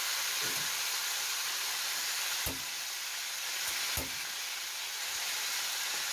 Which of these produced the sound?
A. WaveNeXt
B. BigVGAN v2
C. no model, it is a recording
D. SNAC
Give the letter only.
C